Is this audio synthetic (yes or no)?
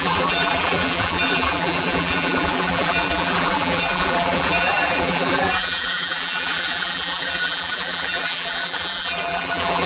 yes